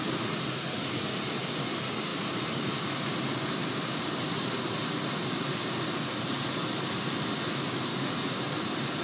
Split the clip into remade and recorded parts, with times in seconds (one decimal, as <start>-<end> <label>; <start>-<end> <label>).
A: 0.0-7.9 recorded; 7.9-8.5 remade; 8.5-9.0 recorded